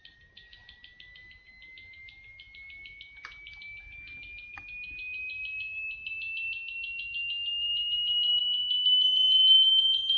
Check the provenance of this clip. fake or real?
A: real